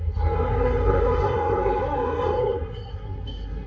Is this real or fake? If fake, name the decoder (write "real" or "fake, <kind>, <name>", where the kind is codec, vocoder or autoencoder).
fake, codec, SNAC